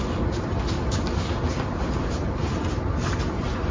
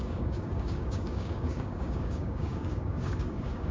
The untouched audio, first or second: first